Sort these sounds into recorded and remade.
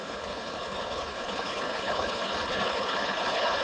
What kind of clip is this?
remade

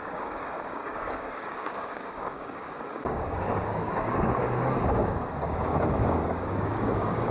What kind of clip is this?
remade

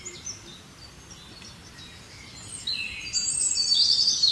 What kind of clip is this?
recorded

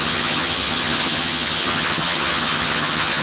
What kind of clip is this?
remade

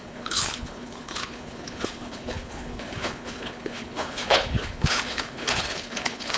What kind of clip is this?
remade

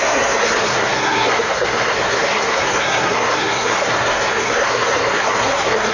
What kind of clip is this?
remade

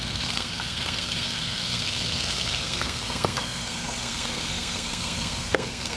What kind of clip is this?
remade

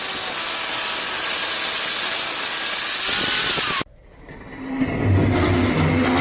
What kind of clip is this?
recorded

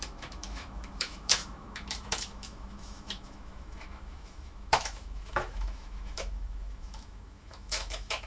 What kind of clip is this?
remade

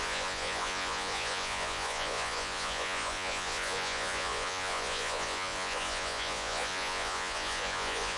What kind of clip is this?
remade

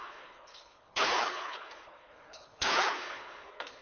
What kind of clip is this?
remade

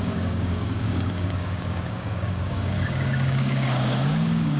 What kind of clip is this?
remade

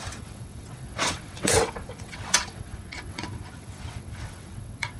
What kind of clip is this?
remade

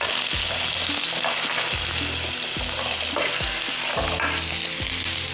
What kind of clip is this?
recorded